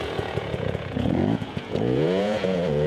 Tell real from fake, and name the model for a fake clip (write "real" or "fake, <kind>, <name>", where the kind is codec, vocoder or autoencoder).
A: fake, vocoder, Vocos